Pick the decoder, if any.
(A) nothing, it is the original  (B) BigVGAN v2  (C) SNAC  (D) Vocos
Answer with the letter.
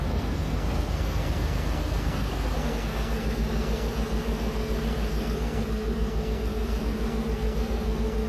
C